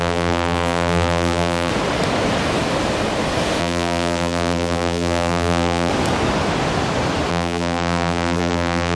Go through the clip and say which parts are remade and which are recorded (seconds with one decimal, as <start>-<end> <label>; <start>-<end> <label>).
0.0-1.7 remade; 1.7-3.6 recorded; 3.6-5.9 remade; 5.9-7.3 recorded; 7.3-8.9 remade